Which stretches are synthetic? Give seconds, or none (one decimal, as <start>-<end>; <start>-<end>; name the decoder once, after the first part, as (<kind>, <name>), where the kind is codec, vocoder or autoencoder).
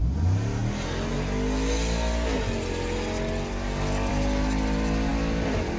none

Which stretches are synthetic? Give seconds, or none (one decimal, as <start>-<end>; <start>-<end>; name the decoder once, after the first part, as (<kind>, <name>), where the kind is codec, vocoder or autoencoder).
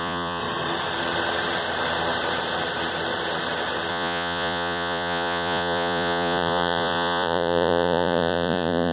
0.0-0.4 (vocoder, Vocos); 3.9-8.9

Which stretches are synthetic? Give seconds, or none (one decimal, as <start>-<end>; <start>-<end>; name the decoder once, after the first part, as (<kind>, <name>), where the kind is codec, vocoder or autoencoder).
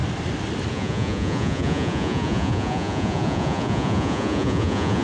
0.7-5.0 (vocoder, Vocos)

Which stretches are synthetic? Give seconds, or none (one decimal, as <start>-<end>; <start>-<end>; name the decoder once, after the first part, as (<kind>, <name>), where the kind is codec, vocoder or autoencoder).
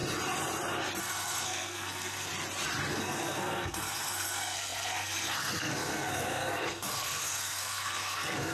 1.0-2.3 (codec, SNAC); 2.9-8.5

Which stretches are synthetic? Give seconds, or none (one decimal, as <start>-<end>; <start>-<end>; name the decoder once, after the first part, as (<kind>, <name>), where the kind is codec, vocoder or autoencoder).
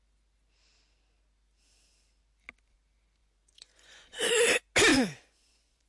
3.2-4.3 (vocoder, Vocos); 4.9-5.9